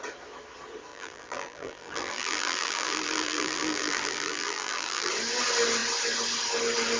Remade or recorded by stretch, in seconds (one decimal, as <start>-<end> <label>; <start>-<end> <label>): 0.0-0.9 recorded; 0.9-5.1 remade; 5.1-7.0 recorded